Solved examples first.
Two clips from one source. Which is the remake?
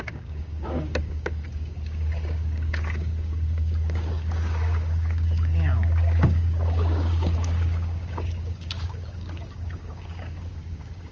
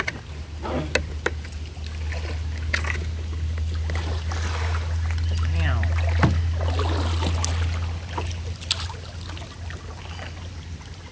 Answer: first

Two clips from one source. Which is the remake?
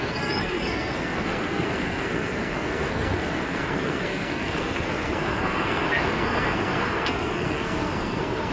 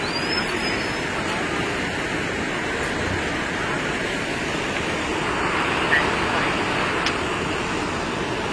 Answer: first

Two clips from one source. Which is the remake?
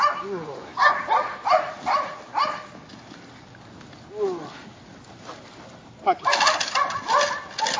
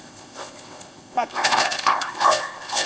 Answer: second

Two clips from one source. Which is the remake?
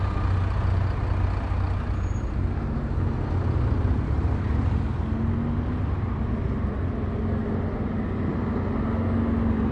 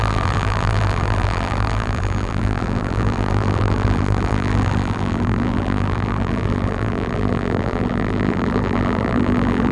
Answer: second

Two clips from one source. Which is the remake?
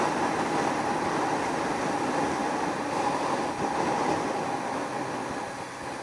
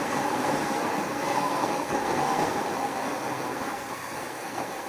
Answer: second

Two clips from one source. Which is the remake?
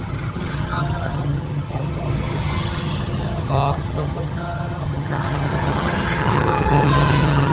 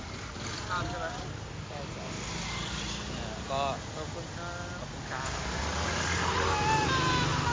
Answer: first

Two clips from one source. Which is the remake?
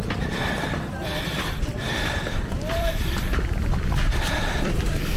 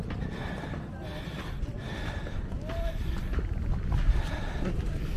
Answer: first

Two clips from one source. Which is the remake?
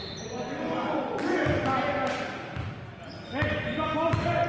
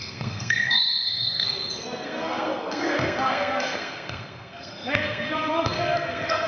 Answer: second